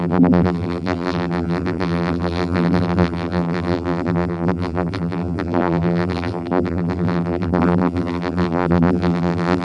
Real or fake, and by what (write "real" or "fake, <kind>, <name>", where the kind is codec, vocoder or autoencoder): fake, vocoder, BigVGAN v2